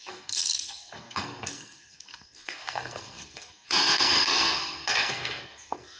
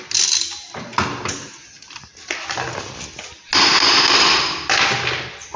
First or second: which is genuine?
second